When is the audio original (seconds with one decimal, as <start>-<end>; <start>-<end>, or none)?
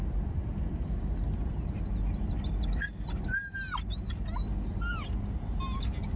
0.0-6.2